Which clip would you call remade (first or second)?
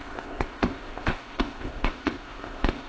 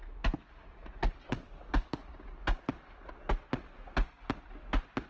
first